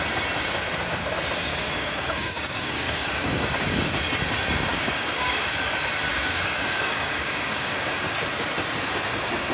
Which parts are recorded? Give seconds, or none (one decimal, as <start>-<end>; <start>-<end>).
0.0-1.5; 3.9-4.7; 5.4-6.1; 7.9-9.5

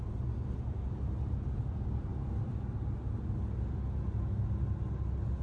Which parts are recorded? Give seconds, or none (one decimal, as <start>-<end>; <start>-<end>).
0.0-5.4

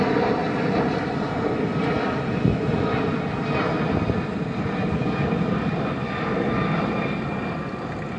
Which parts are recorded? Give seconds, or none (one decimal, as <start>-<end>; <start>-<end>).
0.0-8.2

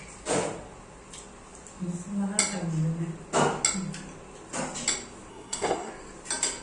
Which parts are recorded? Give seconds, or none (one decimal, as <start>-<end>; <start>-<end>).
0.0-5.3; 5.9-6.6

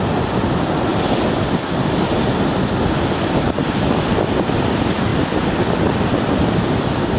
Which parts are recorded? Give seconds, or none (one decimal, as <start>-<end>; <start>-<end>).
0.9-3.4; 5.1-6.6

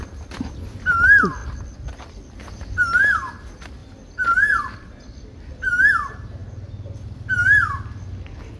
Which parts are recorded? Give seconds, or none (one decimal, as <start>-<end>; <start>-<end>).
0.0-3.8; 5.9-6.4; 7.2-8.6